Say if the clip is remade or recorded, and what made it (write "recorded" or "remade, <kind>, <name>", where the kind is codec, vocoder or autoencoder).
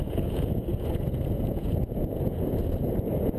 remade, vocoder, Vocos